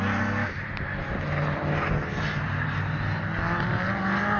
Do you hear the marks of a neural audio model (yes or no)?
no